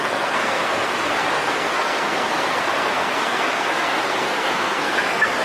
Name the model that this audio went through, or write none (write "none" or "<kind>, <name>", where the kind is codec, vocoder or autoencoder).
codec, SNAC